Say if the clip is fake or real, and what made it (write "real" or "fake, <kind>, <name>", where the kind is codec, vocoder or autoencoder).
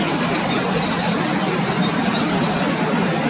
real